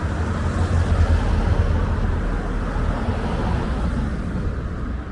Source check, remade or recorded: recorded